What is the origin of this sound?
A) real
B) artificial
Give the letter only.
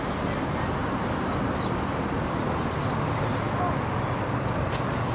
A